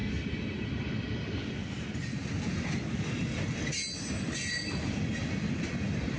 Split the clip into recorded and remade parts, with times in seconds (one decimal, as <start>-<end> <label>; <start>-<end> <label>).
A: 0.0-6.2 recorded